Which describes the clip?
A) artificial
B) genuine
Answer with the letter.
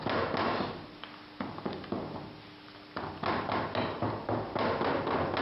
B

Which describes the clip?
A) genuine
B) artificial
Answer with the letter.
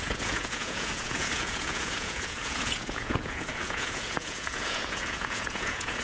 B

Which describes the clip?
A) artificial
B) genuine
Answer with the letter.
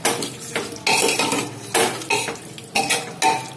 B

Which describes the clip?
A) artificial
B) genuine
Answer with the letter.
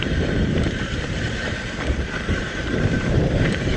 A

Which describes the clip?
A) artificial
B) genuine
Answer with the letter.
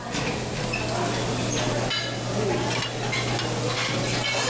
B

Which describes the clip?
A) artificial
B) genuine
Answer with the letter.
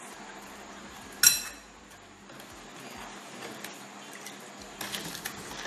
B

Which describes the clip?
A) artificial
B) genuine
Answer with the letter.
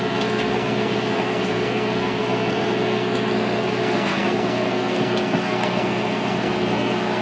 A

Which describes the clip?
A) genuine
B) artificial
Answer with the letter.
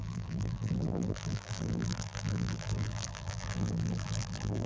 B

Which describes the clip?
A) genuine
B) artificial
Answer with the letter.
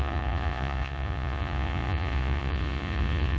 B